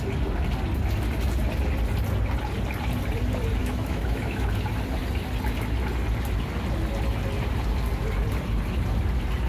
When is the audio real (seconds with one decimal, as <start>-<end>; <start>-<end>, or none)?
0.0-3.6; 4.5-9.5